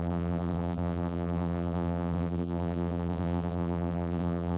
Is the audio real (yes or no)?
no